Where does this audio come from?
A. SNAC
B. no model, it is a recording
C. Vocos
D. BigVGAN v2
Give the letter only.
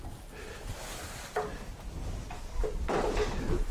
B